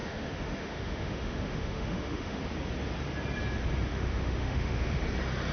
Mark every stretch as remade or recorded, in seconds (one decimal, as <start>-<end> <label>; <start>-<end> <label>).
0.0-2.4 remade; 2.4-3.9 recorded; 3.9-5.0 remade; 5.0-5.5 recorded